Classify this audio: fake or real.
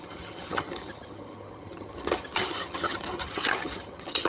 fake